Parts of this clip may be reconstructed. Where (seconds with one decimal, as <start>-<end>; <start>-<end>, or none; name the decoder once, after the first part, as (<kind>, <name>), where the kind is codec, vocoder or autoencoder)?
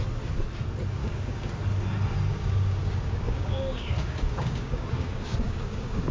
1.0-1.5 (codec, DAC); 2.3-6.1